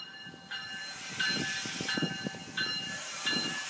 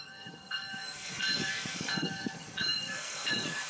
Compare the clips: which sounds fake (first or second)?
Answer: second